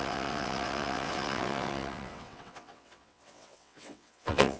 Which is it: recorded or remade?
remade